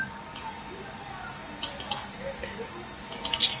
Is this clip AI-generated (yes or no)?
no